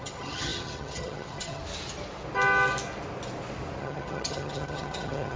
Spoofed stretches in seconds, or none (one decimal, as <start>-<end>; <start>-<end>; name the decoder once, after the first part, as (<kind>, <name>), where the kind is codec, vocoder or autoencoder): 0.0-1.6 (vocoder, HiFi-GAN); 3.8-5.4